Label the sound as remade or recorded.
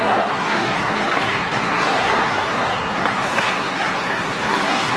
remade